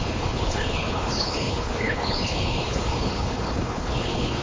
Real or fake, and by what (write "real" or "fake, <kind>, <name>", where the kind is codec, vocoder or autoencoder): fake, codec, HILCodec